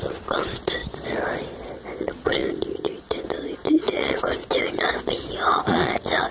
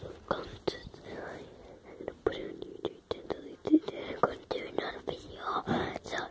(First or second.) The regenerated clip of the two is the first